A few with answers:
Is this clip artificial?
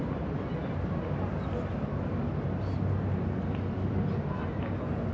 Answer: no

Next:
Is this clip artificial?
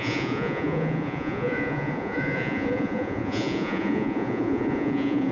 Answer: yes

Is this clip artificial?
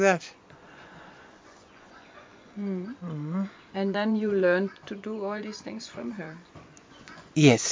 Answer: yes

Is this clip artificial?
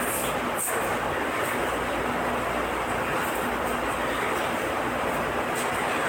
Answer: no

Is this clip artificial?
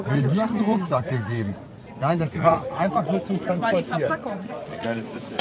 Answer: yes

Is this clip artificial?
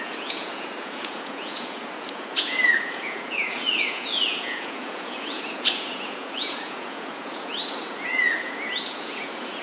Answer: yes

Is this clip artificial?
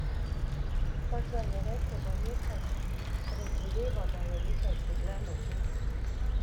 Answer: no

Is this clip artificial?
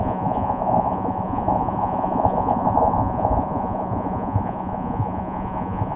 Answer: yes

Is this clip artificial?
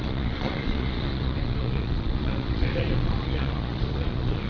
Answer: yes